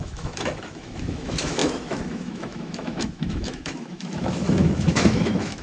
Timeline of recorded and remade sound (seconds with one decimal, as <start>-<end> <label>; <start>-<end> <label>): 0.0-5.6 remade